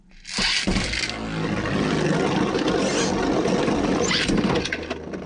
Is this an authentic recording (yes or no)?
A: yes